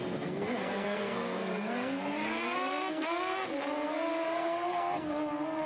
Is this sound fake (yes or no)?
yes